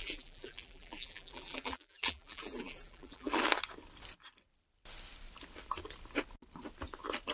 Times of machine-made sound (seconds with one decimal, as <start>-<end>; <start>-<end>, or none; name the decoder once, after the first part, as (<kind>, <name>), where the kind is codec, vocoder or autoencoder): 0.0-3.3 (vocoder, BigVGAN v2)